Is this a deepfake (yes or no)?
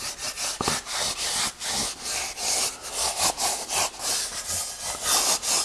no